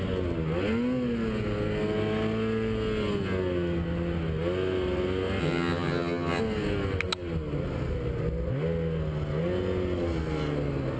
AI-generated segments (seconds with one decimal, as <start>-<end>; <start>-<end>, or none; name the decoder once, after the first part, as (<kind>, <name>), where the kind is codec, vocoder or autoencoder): 5.4-6.4 (vocoder, HiFi-GAN)